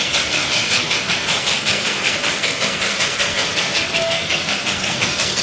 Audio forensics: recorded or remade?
remade